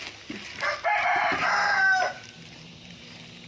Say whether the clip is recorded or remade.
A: recorded